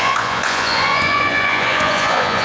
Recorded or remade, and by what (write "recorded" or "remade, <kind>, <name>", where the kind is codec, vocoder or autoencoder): remade, vocoder, Vocos